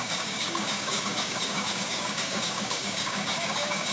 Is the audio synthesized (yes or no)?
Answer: yes